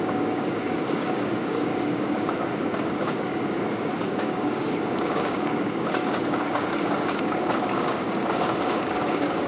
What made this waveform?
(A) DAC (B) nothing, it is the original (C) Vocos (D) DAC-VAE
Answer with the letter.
A